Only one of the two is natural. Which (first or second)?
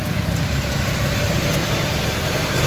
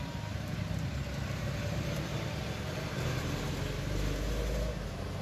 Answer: second